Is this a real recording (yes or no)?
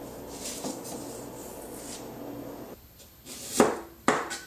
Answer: yes